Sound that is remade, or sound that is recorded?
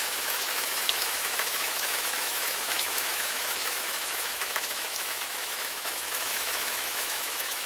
remade